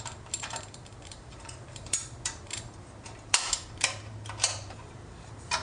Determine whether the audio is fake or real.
fake